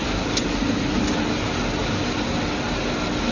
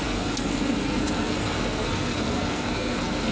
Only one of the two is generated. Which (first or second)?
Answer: second